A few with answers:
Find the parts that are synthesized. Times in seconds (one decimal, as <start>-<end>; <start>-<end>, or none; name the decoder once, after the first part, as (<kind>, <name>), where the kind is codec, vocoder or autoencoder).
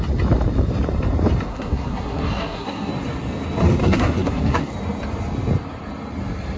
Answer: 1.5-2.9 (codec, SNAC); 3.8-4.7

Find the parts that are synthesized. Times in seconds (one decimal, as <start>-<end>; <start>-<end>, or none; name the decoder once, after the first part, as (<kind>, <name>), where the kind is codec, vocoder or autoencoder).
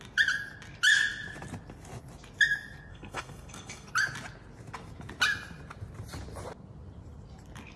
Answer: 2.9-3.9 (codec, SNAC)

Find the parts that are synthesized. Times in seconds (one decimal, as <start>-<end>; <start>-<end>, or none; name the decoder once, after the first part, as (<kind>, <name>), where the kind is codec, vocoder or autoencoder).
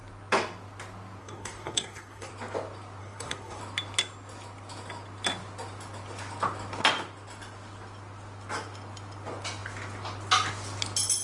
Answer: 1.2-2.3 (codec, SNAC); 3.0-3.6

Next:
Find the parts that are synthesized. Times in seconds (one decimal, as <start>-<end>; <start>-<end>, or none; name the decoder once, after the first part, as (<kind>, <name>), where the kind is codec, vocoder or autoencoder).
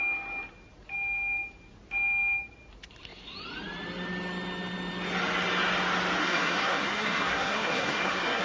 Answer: 6.2-8.4 (codec, SNAC)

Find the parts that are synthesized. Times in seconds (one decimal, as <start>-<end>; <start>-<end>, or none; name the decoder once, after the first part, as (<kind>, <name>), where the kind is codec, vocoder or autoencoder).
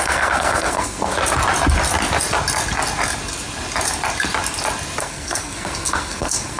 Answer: 0.0-1.1 (codec, SNAC); 5.0-6.6